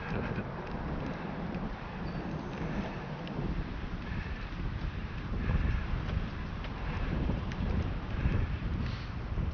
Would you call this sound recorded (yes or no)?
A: no